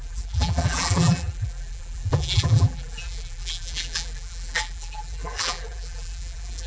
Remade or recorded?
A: remade